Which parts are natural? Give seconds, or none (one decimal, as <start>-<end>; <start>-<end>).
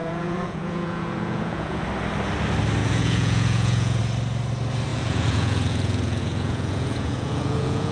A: 1.8-2.8; 4.0-4.9